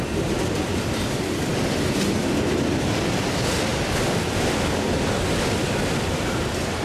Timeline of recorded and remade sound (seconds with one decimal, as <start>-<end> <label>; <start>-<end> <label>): 0.0-6.8 recorded